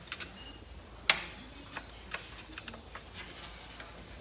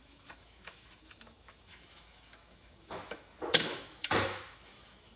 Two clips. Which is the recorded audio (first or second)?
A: first